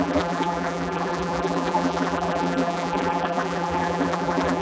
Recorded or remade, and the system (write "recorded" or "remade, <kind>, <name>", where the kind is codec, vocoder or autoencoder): remade, vocoder, BigVGAN v2